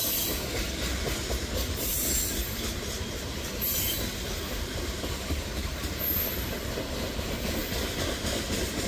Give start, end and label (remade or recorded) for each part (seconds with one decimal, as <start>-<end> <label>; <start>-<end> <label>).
0.0-1.9 recorded; 1.9-6.7 remade; 6.7-8.9 recorded